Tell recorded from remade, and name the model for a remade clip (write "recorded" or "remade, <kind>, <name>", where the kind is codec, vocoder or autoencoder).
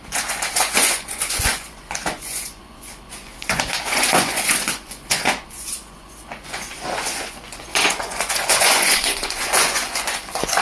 remade, vocoder, Vocos